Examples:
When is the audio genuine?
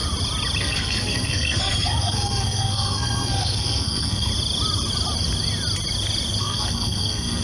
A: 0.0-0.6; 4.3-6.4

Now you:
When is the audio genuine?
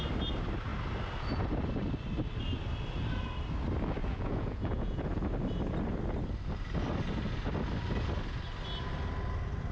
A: 0.0-4.0; 5.2-9.7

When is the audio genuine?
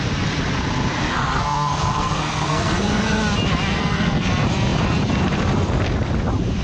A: 0.0-1.0; 3.2-3.7; 4.3-6.6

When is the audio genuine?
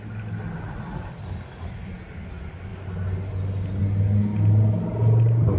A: 0.0-5.6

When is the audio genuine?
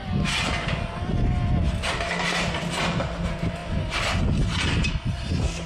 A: 0.0-3.6; 4.2-5.7